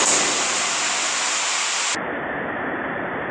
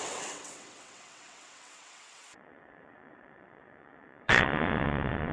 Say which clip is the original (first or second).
first